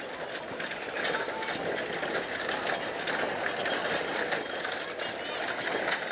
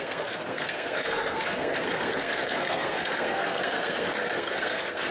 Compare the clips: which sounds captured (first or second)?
first